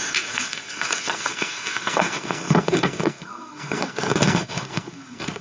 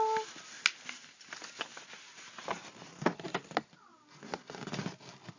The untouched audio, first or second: second